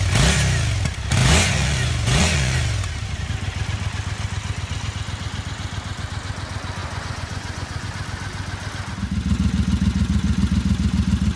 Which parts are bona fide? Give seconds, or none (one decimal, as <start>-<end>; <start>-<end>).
0.0-1.2; 2.6-6.8; 7.9-11.4